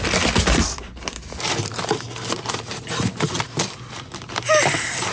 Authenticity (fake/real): real